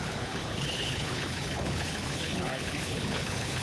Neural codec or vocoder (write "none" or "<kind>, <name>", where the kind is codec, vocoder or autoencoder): codec, HILCodec